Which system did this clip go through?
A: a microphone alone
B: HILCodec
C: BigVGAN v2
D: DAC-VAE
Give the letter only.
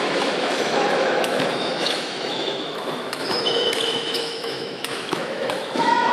D